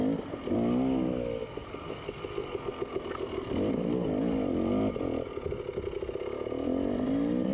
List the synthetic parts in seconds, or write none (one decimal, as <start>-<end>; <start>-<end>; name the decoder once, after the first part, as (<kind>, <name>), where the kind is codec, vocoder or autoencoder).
none